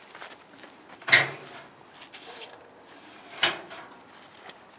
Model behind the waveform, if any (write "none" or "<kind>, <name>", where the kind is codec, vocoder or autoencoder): none